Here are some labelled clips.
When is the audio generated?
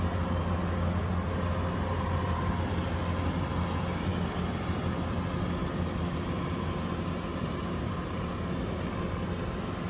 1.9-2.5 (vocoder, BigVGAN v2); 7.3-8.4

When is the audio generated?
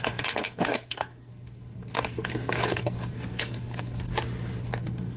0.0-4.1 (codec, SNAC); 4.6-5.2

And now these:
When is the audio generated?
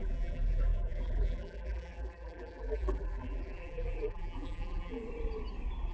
0.0-5.0 (vocoder, BigVGAN v2)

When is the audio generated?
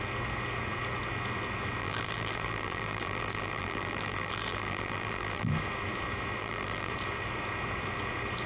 1.8-5.5 (vocoder, BigVGAN v2); 6.4-6.9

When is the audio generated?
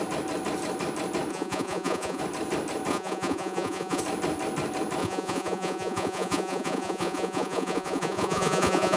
1.3-2.2 (vocoder, Vocos); 2.9-4.0; 5.0-9.0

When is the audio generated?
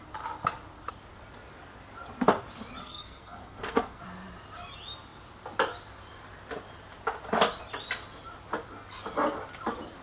2.8-4.0 (codec, SNAC)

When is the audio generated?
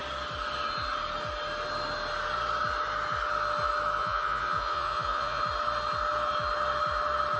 4.0-5.4 (vocoder, Vocos)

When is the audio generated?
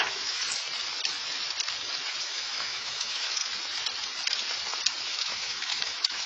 0.0-0.4 (autoencoder, DAC-VAE); 2.2-3.4; 5.1-6.3